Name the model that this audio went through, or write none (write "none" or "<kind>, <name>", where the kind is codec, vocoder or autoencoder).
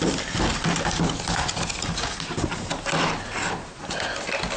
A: none